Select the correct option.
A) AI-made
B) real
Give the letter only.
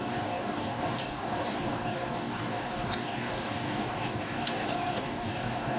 A